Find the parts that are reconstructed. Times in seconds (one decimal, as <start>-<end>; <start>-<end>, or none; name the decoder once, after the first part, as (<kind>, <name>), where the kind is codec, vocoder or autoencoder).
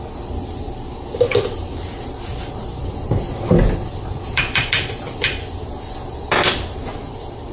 2.3-5.0 (vocoder, BigVGAN v2)